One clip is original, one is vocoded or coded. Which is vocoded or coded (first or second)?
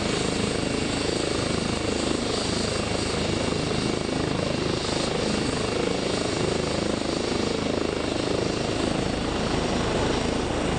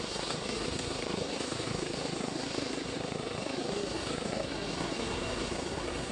second